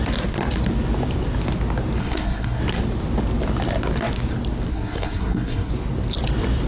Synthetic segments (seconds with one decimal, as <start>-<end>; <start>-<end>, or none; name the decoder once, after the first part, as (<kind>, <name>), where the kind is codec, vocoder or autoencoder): 2.0-2.6 (codec, SNAC); 4.7-5.7